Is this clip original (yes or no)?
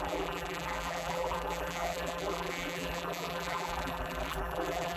no